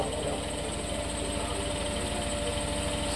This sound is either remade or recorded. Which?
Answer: recorded